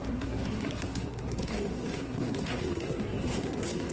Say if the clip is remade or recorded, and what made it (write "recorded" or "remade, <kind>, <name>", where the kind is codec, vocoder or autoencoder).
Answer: remade, codec, SNAC